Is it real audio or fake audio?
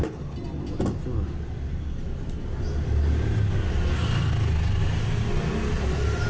real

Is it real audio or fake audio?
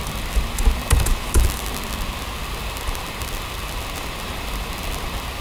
real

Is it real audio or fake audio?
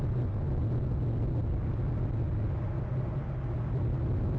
real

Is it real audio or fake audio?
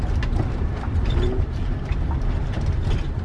fake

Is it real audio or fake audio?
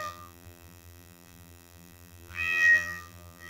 fake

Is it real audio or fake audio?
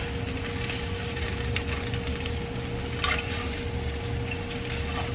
real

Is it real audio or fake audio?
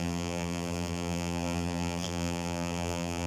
fake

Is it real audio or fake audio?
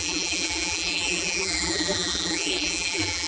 fake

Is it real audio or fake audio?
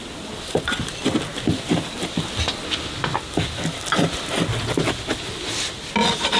real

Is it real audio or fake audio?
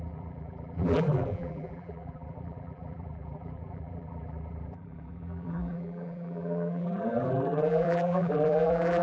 fake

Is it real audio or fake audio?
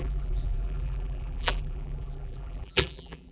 fake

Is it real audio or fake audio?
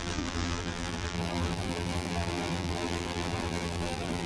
fake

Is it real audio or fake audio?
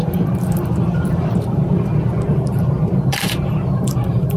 fake